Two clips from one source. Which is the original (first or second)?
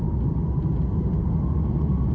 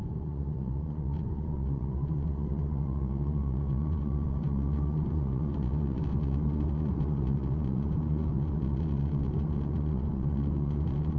first